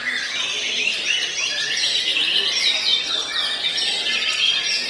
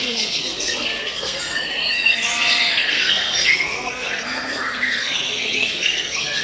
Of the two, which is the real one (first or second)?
first